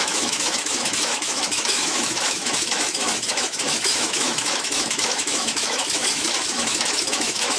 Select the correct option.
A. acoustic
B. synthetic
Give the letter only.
B